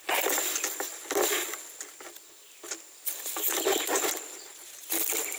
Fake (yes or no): no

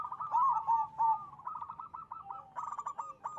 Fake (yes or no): no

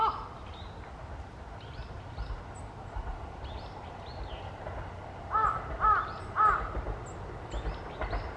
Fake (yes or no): no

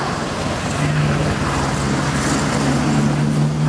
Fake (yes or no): no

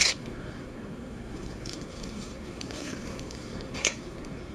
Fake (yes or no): yes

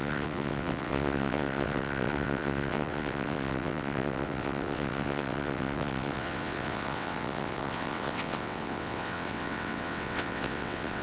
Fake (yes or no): yes